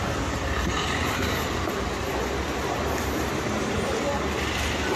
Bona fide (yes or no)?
yes